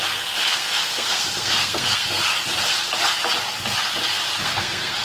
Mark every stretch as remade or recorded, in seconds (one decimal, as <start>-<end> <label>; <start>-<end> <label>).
0.0-2.3 remade; 2.3-4.4 recorded; 4.4-5.0 remade